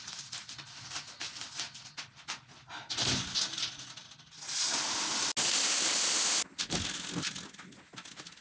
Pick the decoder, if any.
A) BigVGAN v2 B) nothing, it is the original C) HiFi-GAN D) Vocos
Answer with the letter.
B